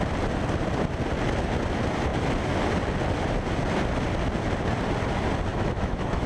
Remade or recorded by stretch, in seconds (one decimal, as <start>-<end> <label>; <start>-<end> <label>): 0.0-5.5 recorded; 5.5-6.3 remade